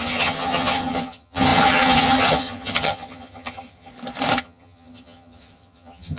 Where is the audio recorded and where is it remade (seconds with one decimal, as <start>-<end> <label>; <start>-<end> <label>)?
0.0-3.9 remade; 3.9-4.4 recorded; 4.4-6.2 remade